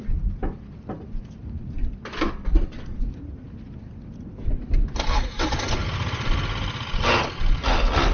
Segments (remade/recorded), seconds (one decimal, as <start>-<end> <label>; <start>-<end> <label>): 0.0-8.1 recorded